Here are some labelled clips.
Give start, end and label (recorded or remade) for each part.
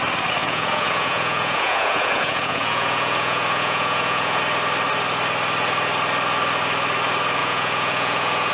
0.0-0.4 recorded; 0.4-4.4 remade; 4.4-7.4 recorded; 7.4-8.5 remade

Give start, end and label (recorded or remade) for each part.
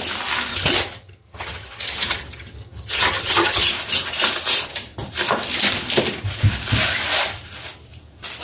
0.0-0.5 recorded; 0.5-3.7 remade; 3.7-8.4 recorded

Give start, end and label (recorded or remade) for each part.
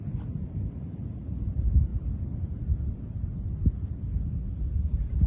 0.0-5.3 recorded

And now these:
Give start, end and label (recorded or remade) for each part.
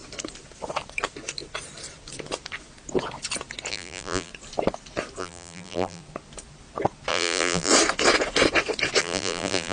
0.0-3.7 recorded; 3.7-4.3 remade; 4.3-5.2 recorded; 5.2-6.0 remade; 6.0-7.1 recorded; 7.1-7.7 remade; 7.7-9.0 recorded; 9.0-9.7 remade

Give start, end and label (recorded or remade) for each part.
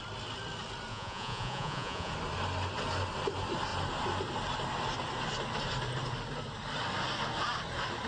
0.0-0.9 recorded; 0.9-2.1 remade; 2.1-8.1 recorded